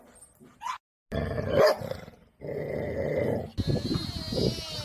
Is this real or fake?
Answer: real